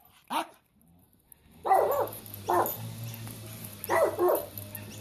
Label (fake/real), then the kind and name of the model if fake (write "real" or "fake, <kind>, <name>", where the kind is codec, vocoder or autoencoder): real